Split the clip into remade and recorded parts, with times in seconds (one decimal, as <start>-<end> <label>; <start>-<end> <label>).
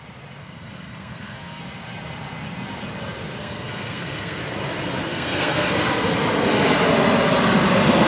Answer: 0.0-0.4 recorded; 0.4-1.6 remade; 1.6-3.4 recorded; 3.4-4.4 remade; 4.4-5.1 recorded; 5.1-5.7 remade; 5.7-8.1 recorded